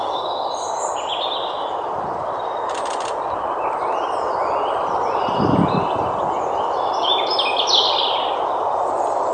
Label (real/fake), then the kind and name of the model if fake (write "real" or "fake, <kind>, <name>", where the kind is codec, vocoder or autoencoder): real